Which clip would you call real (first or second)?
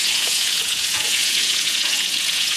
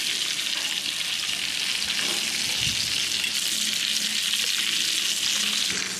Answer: second